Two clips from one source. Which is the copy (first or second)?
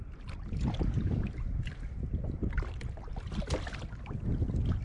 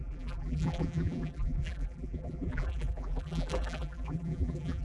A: second